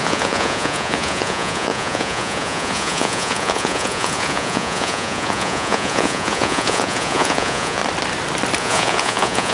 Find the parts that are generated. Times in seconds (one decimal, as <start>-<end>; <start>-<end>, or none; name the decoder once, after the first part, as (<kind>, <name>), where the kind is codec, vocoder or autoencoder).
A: 0.0-7.8 (vocoder, Vocos); 8.6-9.5